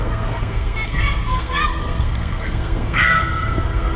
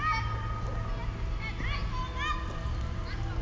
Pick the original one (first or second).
second